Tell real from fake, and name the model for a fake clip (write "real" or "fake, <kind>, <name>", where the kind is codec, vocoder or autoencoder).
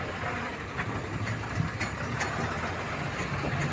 real